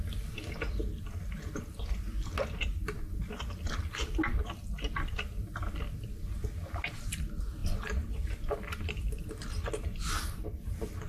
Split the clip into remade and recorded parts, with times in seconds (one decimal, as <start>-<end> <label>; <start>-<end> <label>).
0.0-11.1 recorded